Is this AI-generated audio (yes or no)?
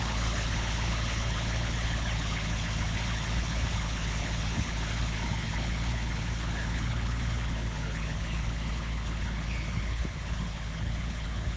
yes